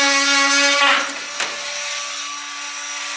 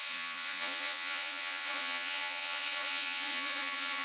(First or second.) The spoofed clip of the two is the second